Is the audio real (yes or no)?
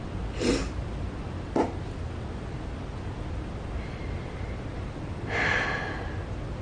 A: yes